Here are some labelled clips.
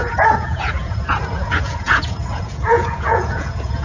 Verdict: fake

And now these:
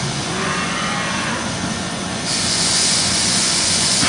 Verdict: fake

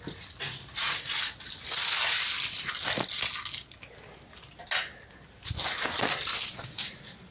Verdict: real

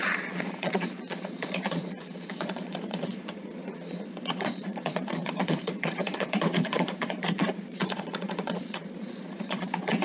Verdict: fake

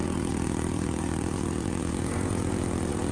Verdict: fake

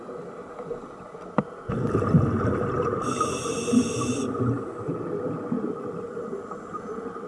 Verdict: real